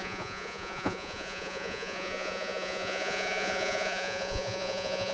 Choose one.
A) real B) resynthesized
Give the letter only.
B